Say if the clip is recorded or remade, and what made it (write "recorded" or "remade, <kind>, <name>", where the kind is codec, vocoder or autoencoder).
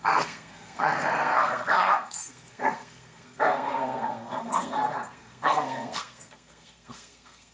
remade, codec, SNAC